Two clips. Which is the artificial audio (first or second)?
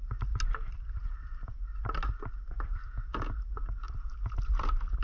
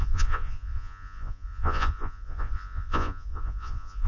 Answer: second